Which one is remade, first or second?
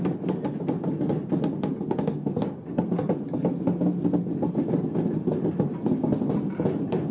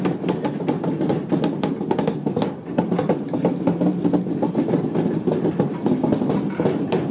second